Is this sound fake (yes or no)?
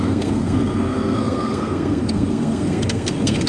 yes